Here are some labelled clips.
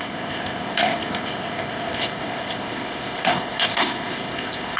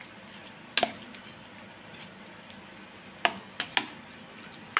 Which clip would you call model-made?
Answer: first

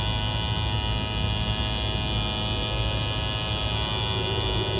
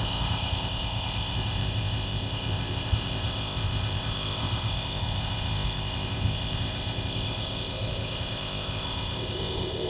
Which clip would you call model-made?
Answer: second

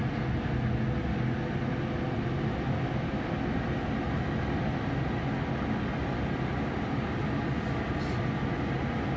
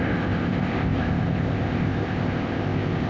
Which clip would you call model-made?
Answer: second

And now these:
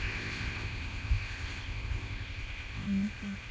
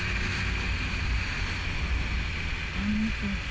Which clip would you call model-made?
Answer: first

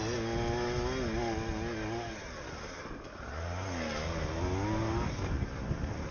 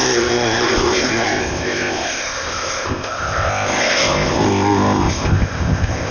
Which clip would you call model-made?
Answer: second